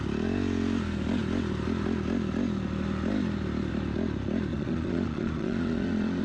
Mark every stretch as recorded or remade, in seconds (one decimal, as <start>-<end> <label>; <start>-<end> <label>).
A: 0.0-4.5 recorded; 4.5-6.2 remade